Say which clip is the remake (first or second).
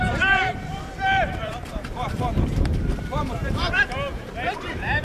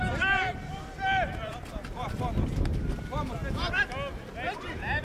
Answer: first